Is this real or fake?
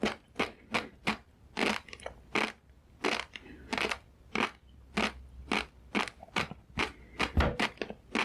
real